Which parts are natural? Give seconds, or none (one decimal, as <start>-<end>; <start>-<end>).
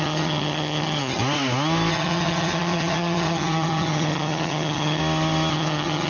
1.2-1.9; 5.0-5.5